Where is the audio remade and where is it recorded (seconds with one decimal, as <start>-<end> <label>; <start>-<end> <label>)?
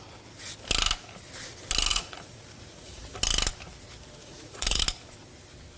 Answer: 0.0-1.9 recorded; 1.9-3.0 remade; 3.0-4.2 recorded; 4.2-4.8 remade; 4.8-5.8 recorded